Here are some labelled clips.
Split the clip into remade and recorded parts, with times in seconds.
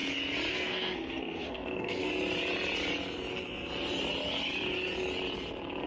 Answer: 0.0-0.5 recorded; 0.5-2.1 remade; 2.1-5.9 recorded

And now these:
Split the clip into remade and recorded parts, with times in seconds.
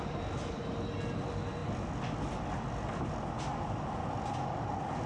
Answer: 0.0-5.1 recorded